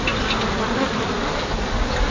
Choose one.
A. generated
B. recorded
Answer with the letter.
B